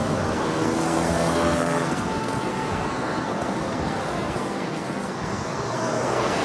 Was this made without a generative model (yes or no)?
no